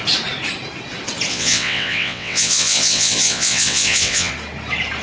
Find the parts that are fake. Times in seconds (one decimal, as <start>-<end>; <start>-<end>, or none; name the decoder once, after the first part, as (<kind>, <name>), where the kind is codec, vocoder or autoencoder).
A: 1.3-4.3 (vocoder, WaveNeXt)